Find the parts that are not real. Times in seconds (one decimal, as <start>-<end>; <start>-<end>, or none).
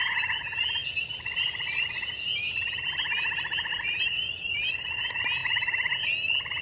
0.8-1.9; 2.4-4.8; 5.4-6.0